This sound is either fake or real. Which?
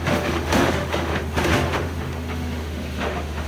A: fake